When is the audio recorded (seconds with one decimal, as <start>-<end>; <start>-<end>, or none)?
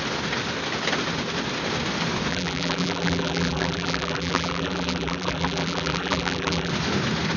0.0-2.3; 6.7-7.4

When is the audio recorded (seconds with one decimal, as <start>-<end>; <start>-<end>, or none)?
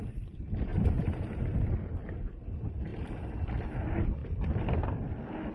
0.0-0.7; 1.6-5.5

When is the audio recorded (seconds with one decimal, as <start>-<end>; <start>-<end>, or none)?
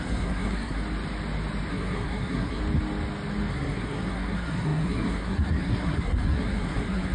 0.8-1.7; 2.6-3.5